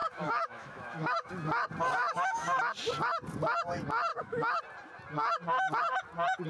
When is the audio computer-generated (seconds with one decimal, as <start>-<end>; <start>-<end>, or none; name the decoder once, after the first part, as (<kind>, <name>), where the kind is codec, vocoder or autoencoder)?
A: 0.0-1.3 (autoencoder, DAC-VAE); 2.0-2.6; 4.1-4.6